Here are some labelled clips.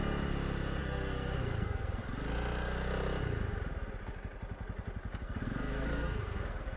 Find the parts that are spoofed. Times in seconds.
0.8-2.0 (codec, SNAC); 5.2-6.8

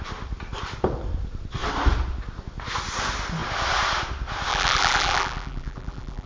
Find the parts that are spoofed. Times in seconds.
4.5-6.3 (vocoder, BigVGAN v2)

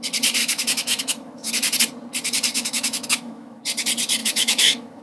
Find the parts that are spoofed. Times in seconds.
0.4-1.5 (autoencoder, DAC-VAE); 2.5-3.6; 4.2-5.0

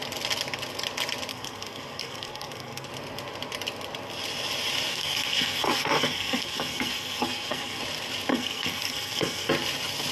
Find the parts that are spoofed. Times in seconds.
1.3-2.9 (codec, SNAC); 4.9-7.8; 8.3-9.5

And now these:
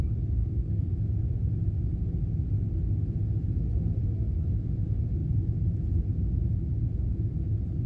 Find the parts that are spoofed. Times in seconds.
0.4-0.9 (codec, SNAC)